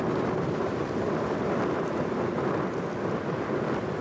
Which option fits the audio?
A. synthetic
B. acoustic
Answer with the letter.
B